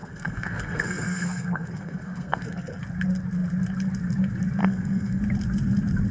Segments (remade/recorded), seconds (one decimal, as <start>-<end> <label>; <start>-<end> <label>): 0.0-2.8 remade; 2.8-4.6 recorded; 4.6-5.2 remade; 5.2-6.1 recorded